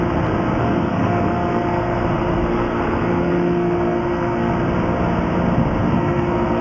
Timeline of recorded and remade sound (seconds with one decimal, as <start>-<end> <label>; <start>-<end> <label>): 0.0-0.6 recorded; 0.6-4.5 remade; 4.5-5.8 recorded; 5.8-6.6 remade